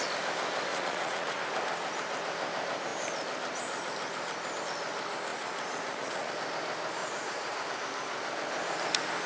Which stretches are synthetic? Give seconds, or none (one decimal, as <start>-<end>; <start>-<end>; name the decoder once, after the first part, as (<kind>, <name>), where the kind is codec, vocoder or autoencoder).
0.7-1.4 (vocoder, Vocos); 5.3-6.3; 7.0-7.7